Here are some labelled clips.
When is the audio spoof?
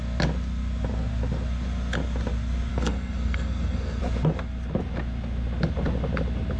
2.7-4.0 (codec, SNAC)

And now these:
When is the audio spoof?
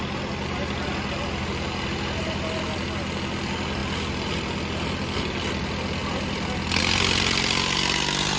none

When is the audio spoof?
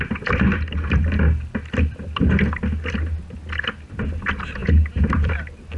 none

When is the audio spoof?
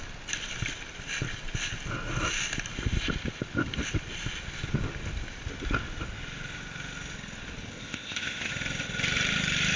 7.7-8.5 (codec, ZipCodec)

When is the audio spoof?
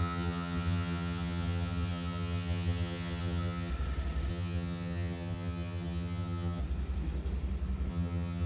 0.0-3.7 (vocoder, HiFi-GAN); 4.3-6.6; 7.9-8.5